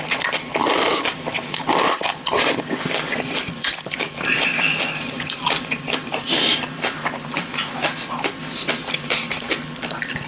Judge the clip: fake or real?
fake